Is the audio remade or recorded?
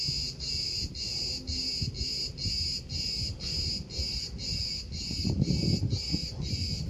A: recorded